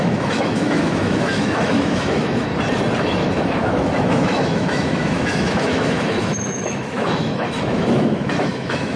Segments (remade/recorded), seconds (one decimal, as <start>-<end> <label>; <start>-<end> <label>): 0.0-2.5 remade; 2.5-3.0 recorded; 3.0-9.0 remade